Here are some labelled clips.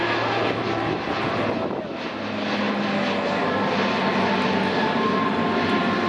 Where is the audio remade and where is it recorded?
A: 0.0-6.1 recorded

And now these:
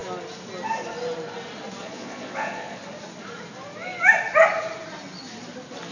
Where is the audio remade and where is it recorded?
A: 0.0-1.8 recorded; 1.8-2.8 remade; 2.8-5.9 recorded

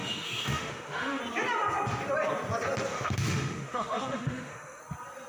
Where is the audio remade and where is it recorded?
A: 0.0-1.2 remade; 1.2-2.9 recorded; 2.9-4.8 remade; 4.8-5.3 recorded

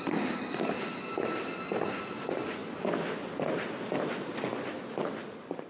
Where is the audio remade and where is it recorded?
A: 0.0-5.7 recorded

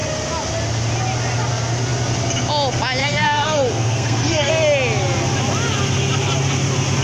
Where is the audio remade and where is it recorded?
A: 0.0-3.0 recorded; 3.0-4.5 remade; 4.5-7.0 recorded

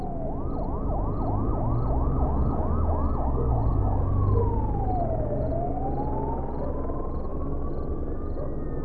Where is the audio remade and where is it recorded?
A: 0.0-8.8 recorded